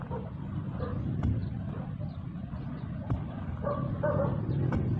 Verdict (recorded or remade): recorded